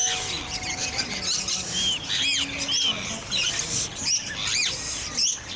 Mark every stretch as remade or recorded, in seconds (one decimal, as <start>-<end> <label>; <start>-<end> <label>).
0.0-5.6 recorded